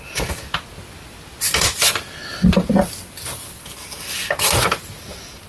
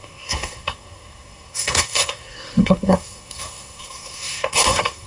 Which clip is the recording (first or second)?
first